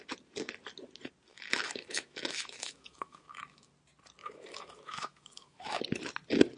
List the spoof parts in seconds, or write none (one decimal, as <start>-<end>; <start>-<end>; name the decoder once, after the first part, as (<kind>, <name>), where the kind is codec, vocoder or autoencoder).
1.3-3.7 (autoencoder, DAC-VAE); 4.2-5.8